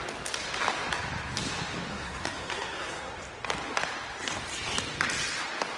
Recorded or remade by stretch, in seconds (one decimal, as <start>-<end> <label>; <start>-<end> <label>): 0.0-1.9 recorded; 1.9-3.2 remade; 3.2-5.8 recorded